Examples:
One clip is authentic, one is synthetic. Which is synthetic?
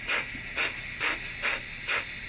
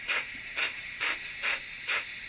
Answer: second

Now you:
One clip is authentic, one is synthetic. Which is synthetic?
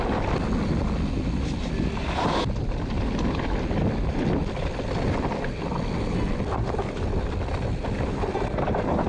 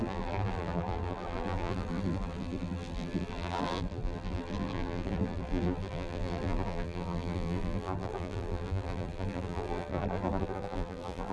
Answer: second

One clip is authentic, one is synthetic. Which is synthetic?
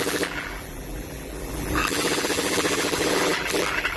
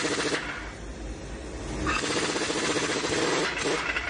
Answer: first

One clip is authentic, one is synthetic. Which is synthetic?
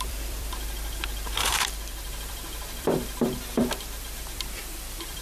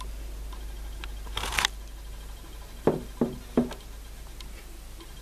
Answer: first